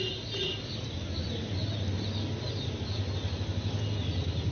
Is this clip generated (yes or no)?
no